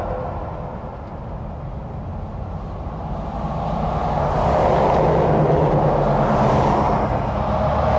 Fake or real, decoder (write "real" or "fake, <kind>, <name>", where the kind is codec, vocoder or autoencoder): real